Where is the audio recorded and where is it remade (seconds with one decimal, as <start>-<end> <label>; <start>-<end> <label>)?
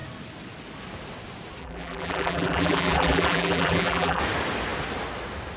0.0-1.6 recorded; 1.6-4.2 remade; 4.2-5.6 recorded